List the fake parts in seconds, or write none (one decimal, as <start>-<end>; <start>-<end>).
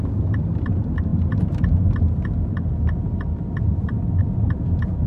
0.0-1.1; 4.2-5.1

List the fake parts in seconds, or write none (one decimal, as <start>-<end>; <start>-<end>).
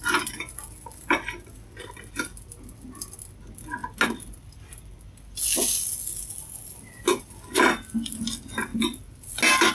none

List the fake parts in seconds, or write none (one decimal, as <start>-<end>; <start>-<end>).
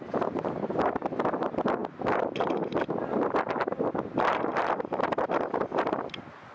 1.8-2.8; 4.5-6.5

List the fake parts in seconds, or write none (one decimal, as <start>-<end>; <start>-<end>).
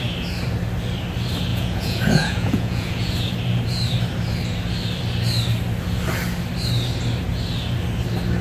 1.5-3.3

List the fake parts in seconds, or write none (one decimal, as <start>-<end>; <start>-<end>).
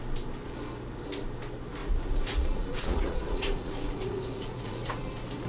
1.8-5.1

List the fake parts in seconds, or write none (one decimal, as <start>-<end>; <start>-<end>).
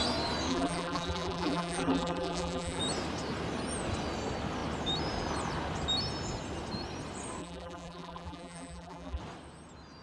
0.5-2.8; 7.4-9.2